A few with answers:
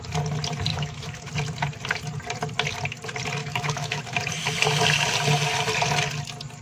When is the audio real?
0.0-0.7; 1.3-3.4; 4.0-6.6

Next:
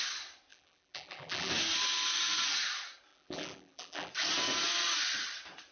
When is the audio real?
0.0-0.5; 1.5-3.1; 4.1-5.7

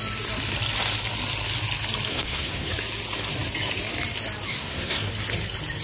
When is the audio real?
0.0-2.1; 2.7-4.5; 5.1-5.8

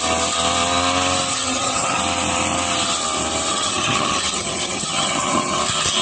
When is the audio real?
0.0-1.3; 2.0-3.5; 5.6-6.0

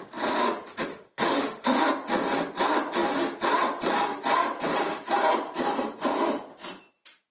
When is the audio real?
0.0-0.9; 1.8-7.3

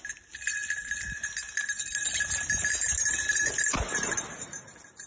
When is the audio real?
0.0-5.1

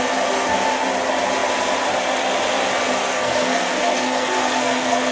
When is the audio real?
0.0-3.0

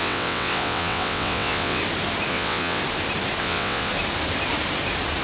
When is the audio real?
1.8-2.3; 2.8-3.4; 3.9-5.2